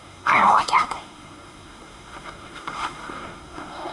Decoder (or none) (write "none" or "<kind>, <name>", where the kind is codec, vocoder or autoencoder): codec, SNAC